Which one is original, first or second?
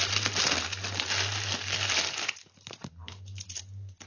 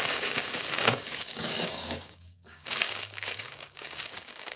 first